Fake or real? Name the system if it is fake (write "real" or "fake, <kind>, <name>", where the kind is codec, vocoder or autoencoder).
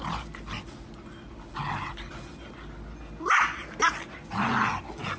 real